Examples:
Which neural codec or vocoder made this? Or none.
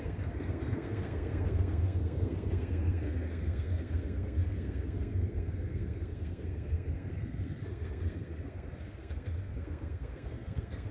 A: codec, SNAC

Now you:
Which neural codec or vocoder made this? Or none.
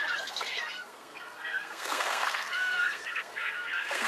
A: codec, SNAC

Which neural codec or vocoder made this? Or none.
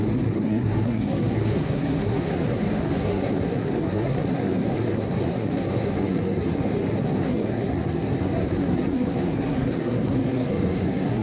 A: codec, SNAC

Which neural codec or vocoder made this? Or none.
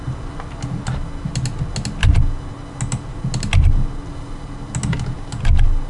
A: none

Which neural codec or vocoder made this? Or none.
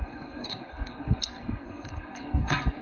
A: codec, SNAC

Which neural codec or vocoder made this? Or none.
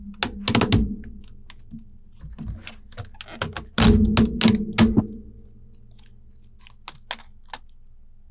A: none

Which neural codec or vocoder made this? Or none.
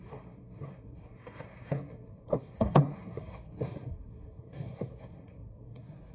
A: codec, SNAC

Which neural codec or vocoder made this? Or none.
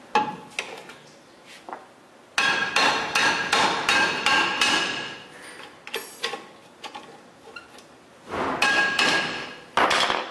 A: none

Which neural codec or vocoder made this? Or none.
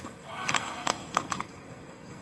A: codec, SNAC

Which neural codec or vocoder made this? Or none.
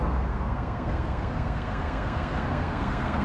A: codec, SNAC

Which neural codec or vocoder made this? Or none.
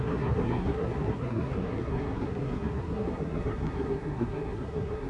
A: codec, SNAC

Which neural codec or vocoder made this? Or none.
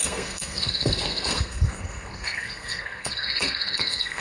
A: codec, SNAC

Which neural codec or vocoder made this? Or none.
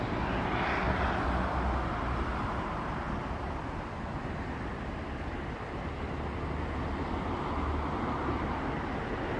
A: none